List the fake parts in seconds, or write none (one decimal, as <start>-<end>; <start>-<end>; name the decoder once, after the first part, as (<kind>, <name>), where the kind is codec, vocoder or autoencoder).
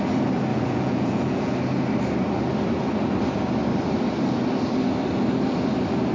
0.5-1.6 (vocoder, Vocos)